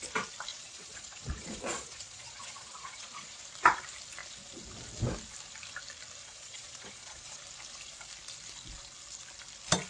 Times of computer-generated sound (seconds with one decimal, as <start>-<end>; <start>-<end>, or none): 0.5-3.4; 6.2-7.4